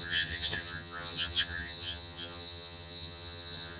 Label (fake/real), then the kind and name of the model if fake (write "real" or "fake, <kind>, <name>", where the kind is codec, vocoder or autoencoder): fake, vocoder, HiFi-GAN